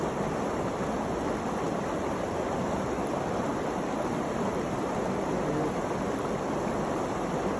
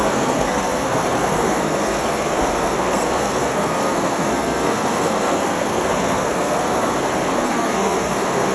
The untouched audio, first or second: first